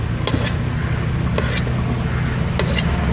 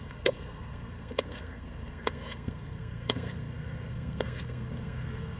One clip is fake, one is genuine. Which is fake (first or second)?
second